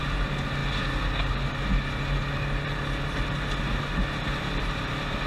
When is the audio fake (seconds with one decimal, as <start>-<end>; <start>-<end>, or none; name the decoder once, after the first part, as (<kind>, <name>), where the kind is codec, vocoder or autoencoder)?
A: none

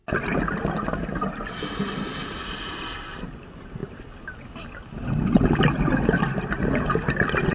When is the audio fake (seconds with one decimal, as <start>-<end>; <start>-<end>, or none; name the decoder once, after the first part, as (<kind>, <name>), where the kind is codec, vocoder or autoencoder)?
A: none

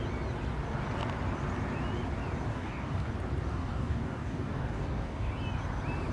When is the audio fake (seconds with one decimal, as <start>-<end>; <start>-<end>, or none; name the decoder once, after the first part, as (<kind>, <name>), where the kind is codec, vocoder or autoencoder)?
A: 2.5-3.1 (codec, DAC); 3.5-5.3

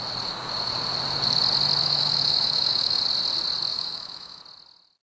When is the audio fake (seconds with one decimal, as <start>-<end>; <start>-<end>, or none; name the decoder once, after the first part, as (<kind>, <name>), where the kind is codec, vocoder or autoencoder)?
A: 1.8-3.0 (autoencoder, DAC-VAE); 3.7-4.4